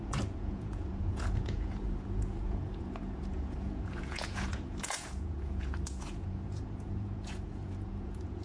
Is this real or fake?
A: fake